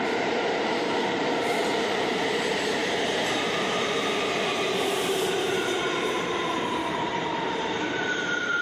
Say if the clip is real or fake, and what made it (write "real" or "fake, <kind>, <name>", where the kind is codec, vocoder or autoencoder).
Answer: fake, vocoder, BigVGAN v2